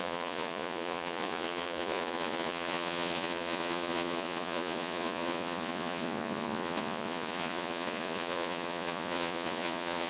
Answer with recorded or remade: remade